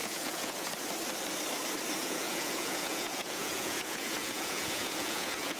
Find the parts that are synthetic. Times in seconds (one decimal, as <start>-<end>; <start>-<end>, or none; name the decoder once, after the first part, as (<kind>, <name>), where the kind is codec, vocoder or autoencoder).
0.0-0.7 (vocoder, Vocos); 2.0-5.6